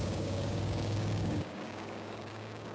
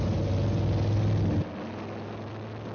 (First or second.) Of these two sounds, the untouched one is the second